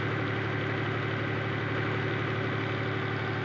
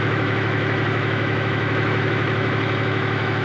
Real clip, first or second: first